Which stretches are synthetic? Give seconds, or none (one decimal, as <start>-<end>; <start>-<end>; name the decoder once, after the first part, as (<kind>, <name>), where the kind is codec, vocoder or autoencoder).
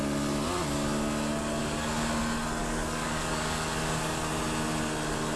1.6-2.2 (codec, DAC); 2.6-4.3